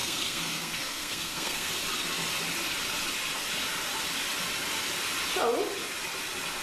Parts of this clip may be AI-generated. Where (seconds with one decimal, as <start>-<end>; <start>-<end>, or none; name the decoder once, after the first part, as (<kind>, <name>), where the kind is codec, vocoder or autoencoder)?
0.0-1.7 (codec, SNAC)